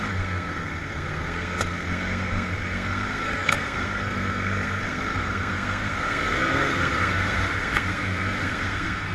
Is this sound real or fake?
fake